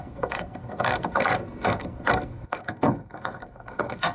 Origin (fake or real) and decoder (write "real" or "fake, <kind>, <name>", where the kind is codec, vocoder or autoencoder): fake, codec, SNAC